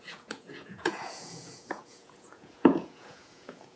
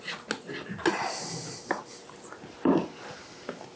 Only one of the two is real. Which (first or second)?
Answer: second